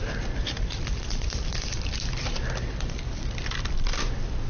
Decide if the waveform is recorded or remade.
remade